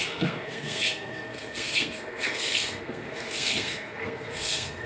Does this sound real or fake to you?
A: fake